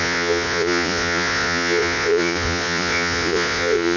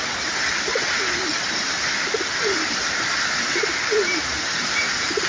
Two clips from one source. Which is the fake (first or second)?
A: first